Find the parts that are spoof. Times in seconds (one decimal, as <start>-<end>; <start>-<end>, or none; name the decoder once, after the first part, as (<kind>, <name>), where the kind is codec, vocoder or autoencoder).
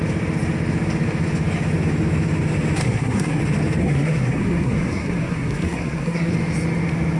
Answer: 2.8-3.4 (codec, SNAC); 3.8-6.3